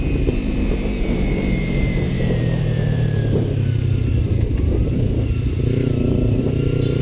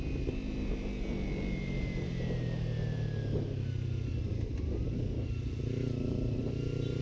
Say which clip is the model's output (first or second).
first